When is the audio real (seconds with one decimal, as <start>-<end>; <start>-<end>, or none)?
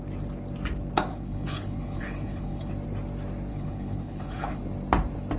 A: 0.0-1.1; 2.7-3.5; 4.6-5.4